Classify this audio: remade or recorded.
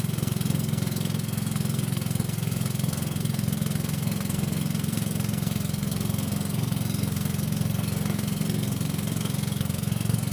remade